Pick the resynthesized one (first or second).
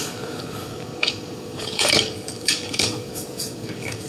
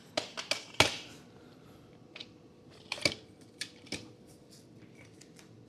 first